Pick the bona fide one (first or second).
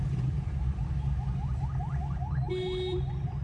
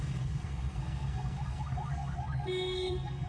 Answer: first